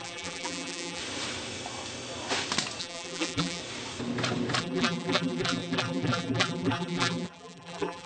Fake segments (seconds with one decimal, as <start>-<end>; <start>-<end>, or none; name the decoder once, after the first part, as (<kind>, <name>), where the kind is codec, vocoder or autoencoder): 0.0-1.0 (vocoder, BigVGAN v2); 2.8-3.6; 4.6-8.1